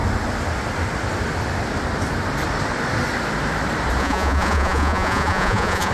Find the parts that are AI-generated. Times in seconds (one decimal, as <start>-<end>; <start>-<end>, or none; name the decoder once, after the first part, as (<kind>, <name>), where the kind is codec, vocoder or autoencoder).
4.0-5.9 (vocoder, Vocos)